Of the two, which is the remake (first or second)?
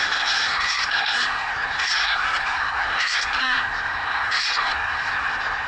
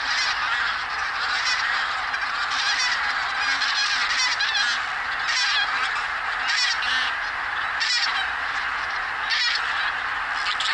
first